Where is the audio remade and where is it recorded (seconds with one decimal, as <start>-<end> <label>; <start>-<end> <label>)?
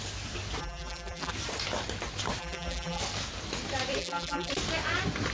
0.0-0.6 recorded; 0.6-1.3 remade; 1.3-2.4 recorded; 2.4-3.0 remade; 3.0-4.0 recorded; 4.0-4.5 remade; 4.5-5.3 recorded